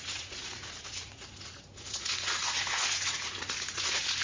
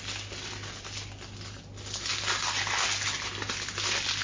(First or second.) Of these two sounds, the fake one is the first